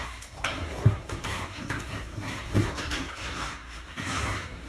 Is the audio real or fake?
fake